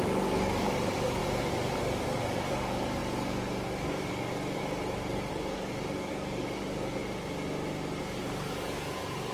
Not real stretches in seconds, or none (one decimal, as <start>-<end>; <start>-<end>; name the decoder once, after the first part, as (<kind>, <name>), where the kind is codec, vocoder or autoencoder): 0.0-1.2 (codec, DAC); 1.8-4.6; 5.3-7.0; 8.0-9.3